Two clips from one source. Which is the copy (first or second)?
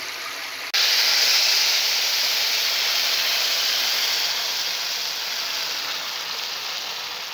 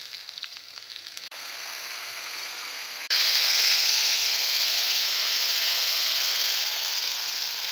second